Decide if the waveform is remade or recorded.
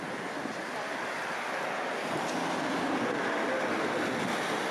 recorded